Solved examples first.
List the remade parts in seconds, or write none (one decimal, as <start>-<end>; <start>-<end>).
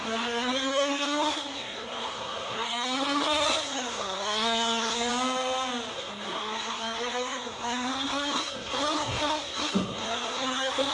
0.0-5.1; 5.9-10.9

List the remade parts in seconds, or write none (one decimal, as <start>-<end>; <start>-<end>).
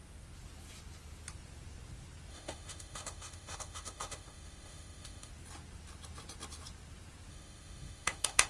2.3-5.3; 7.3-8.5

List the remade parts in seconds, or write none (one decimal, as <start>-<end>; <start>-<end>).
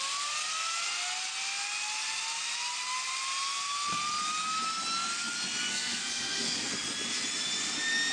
5.7-6.7